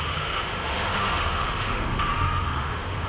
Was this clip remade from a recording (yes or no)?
yes